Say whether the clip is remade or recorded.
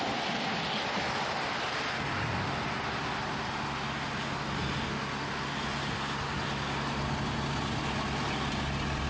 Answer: recorded